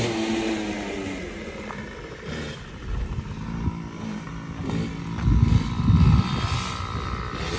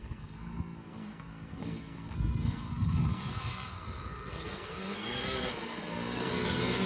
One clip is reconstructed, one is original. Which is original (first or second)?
first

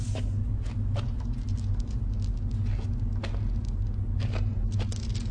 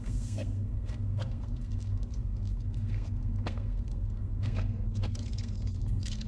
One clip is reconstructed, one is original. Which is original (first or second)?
first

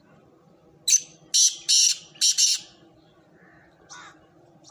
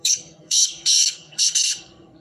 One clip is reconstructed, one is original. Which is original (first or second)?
first